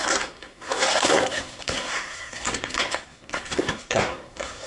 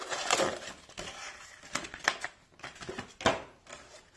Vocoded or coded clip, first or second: first